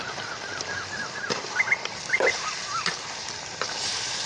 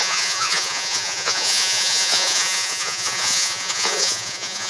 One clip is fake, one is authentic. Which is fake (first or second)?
second